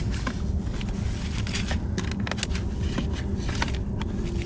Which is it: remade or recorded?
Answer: recorded